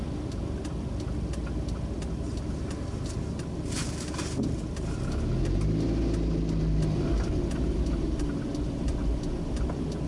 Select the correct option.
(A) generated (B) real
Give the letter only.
B